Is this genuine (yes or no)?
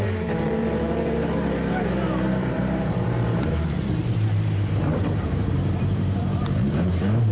no